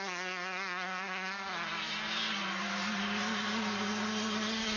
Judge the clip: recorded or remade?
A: recorded